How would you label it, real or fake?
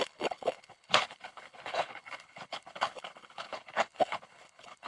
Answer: fake